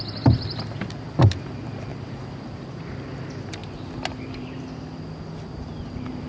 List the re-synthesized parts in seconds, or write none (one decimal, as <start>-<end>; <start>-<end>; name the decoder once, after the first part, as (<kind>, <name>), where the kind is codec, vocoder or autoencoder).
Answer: 0.0-6.3 (vocoder, BigVGAN v2)